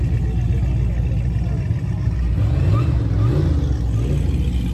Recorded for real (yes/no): yes